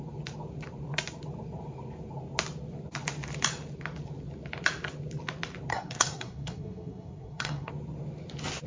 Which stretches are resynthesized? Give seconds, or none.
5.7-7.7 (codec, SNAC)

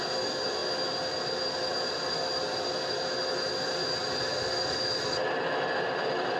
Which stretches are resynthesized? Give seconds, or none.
none

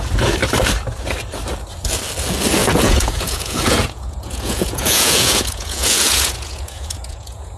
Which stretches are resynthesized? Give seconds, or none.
2.6-7.6 (vocoder, Vocos)

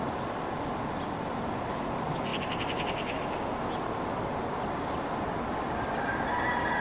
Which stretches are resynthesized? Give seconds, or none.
none